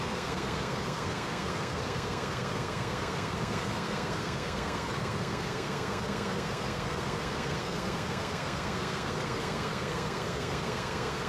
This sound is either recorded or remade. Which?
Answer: remade